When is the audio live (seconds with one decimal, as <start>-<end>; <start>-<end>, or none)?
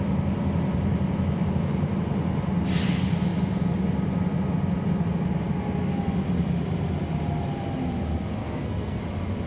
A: 0.0-8.4; 9.0-9.5